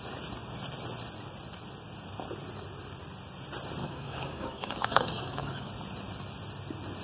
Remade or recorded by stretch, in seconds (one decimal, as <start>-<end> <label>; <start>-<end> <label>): 0.0-3.8 recorded; 3.8-5.7 remade; 5.7-7.0 recorded